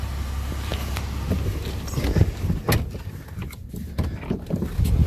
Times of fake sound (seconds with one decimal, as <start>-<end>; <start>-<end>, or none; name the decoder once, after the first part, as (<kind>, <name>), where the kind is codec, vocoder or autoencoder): none